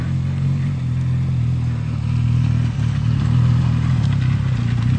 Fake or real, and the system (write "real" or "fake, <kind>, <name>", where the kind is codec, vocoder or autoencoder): real